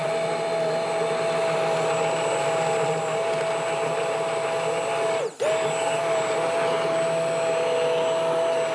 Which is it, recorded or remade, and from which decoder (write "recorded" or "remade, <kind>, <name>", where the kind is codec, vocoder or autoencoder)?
recorded